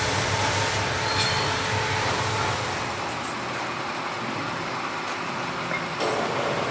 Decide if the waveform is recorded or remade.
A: recorded